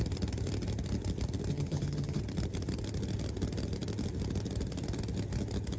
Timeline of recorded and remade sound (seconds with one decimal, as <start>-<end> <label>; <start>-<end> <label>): 0.0-1.5 recorded; 1.5-2.2 remade; 2.2-5.8 recorded